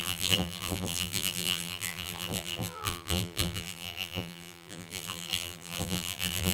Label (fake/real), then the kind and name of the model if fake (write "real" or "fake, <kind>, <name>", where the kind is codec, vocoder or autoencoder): fake, vocoder, BigVGAN v2